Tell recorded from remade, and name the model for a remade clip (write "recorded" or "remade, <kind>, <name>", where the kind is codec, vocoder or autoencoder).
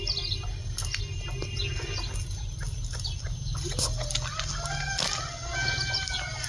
recorded